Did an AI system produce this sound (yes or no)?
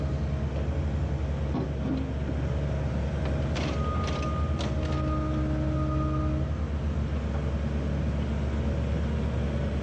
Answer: no